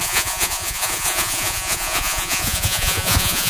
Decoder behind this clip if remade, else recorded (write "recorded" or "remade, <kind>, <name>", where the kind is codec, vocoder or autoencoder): remade, vocoder, Vocos